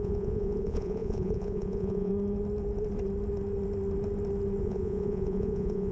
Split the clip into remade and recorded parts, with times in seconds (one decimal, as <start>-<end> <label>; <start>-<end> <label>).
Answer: 0.0-2.1 remade; 2.1-4.6 recorded; 4.6-5.9 remade